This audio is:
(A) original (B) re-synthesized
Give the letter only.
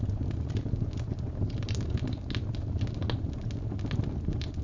A